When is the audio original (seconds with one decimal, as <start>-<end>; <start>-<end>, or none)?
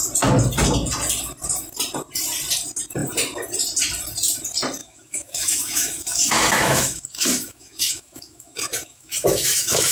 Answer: 0.0-4.8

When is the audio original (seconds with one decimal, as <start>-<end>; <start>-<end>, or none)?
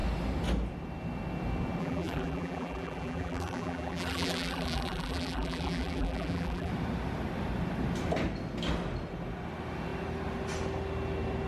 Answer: 0.0-1.8; 6.7-11.5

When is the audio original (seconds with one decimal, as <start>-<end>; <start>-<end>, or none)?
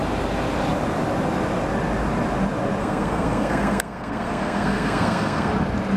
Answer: 0.0-2.8; 5.5-6.0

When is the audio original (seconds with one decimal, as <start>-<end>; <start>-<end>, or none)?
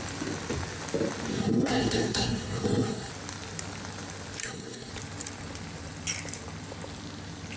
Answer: 0.0-1.3; 3.1-4.4; 4.9-7.6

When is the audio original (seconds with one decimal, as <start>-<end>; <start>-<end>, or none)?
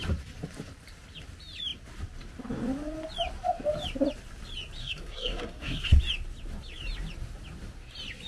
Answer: 0.0-4.8; 6.0-8.3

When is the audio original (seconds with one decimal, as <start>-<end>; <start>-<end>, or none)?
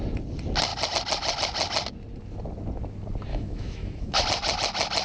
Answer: 0.0-3.3; 4.2-5.0